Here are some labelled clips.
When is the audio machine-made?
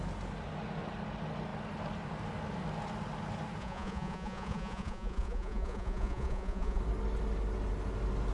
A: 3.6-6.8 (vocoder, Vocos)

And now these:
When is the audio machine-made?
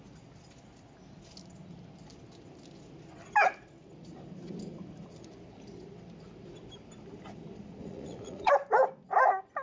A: 7.8-8.5 (vocoder, Vocos)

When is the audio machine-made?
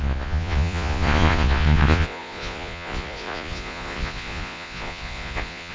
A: 0.0-5.7 (vocoder, Vocos)